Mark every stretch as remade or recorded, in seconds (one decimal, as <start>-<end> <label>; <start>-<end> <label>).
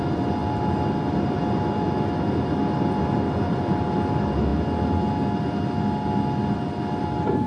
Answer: 0.0-7.5 recorded